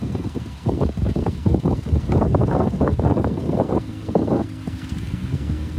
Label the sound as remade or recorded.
remade